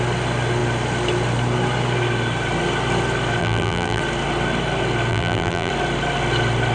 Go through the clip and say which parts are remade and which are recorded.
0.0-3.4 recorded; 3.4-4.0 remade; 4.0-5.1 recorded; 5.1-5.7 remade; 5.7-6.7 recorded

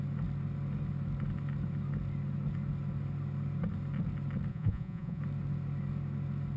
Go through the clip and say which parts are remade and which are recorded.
0.0-4.5 recorded; 4.5-5.2 remade; 5.2-6.6 recorded

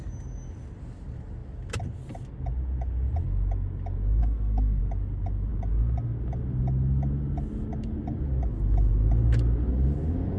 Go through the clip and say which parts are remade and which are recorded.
0.0-4.2 recorded; 4.2-4.8 remade; 4.8-10.4 recorded

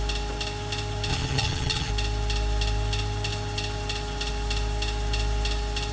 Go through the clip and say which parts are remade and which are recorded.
0.0-1.1 recorded; 1.1-1.9 remade; 1.9-5.9 recorded

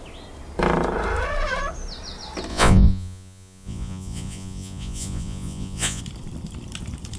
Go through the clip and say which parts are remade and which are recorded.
0.0-2.5 recorded; 2.5-6.0 remade; 6.0-7.2 recorded

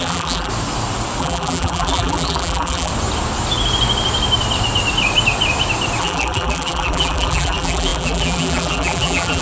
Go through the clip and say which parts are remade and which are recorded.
0.0-0.5 remade; 0.5-1.2 recorded; 1.2-2.9 remade; 2.9-6.0 recorded; 6.0-9.4 remade

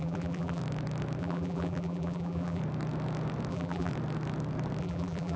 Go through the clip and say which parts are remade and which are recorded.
0.0-0.6 remade; 0.6-1.2 recorded; 1.2-2.6 remade; 2.6-3.5 recorded; 3.5-3.9 remade; 3.9-4.8 recorded; 4.8-5.4 remade